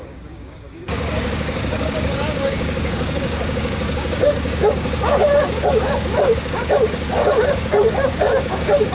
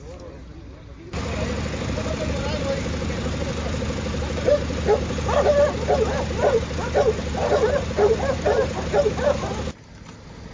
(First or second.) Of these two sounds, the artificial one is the first